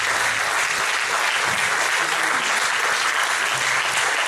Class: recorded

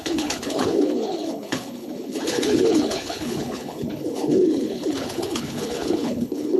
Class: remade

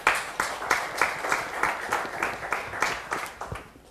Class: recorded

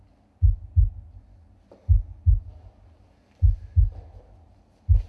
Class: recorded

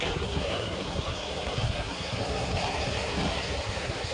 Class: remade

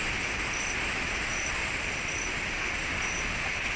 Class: recorded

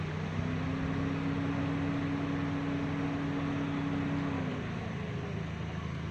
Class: recorded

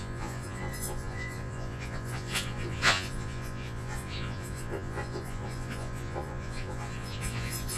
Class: remade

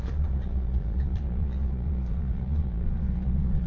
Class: remade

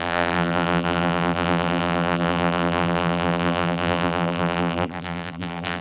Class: remade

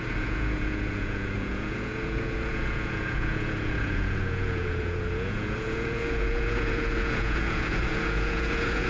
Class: remade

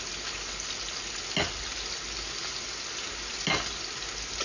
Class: recorded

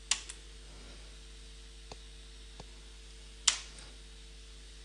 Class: recorded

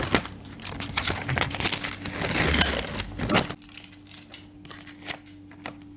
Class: recorded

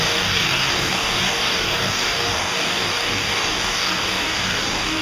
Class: remade